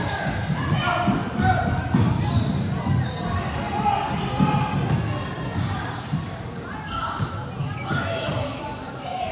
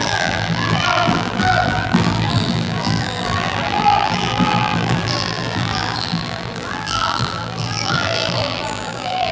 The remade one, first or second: second